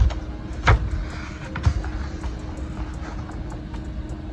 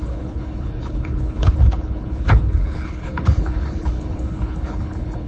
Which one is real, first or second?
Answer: first